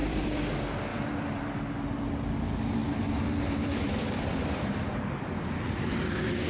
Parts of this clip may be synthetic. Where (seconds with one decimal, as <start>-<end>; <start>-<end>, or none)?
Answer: 0.0-0.5; 0.9-1.6; 2.8-5.1